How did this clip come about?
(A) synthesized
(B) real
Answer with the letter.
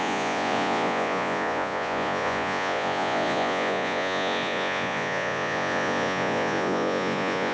A